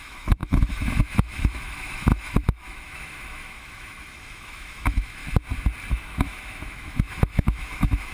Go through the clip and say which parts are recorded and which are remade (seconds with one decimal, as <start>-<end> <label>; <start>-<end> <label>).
0.0-5.2 remade; 5.2-5.9 recorded; 5.9-8.1 remade